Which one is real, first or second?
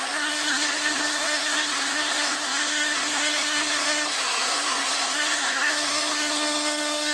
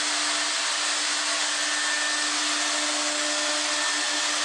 second